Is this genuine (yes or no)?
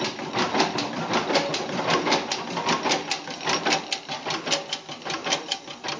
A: yes